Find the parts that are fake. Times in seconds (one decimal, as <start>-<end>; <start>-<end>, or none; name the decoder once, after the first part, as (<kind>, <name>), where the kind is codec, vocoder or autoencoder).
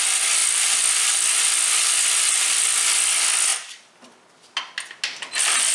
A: none